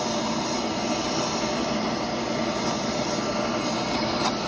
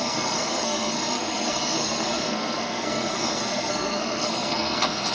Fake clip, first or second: second